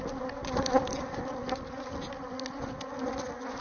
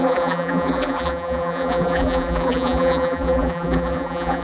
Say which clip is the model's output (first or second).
second